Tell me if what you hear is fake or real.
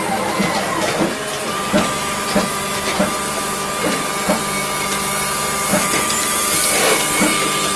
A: real